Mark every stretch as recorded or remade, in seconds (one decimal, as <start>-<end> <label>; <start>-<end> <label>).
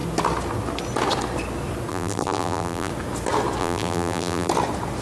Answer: 0.0-1.9 recorded; 1.9-2.9 remade; 2.9-3.6 recorded; 3.6-4.5 remade; 4.5-5.0 recorded